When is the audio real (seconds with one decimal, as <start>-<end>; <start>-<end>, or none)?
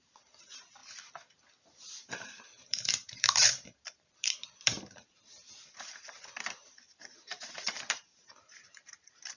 0.8-2.1